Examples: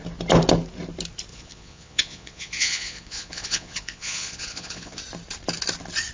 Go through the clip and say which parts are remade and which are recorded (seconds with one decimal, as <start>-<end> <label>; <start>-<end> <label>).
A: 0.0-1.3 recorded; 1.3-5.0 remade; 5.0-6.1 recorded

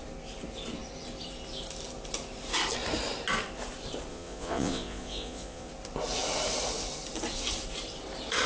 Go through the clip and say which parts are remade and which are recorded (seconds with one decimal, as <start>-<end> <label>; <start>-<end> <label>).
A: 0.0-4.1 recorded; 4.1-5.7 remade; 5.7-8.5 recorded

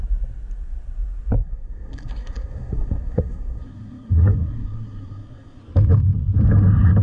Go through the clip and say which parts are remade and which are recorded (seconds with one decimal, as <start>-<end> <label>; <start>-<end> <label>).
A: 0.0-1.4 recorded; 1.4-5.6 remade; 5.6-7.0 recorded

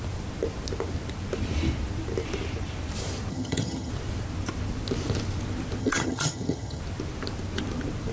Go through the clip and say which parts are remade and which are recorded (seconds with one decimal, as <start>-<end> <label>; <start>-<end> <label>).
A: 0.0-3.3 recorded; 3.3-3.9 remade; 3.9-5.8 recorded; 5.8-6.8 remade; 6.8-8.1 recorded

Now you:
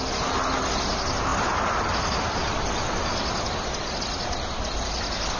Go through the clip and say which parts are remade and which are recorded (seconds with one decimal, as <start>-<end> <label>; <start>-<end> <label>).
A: 0.0-5.4 recorded